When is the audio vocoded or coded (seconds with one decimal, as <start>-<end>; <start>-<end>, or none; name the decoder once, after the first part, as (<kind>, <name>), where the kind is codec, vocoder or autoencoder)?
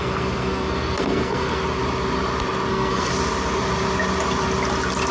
0.0-1.6 (codec, SNAC); 2.7-3.1